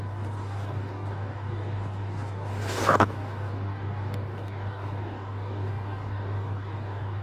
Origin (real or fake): fake